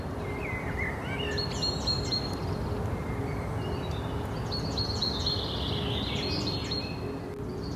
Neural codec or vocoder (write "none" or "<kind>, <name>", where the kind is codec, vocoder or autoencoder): none